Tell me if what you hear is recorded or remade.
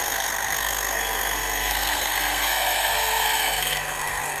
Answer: remade